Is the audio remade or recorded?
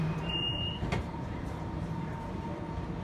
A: remade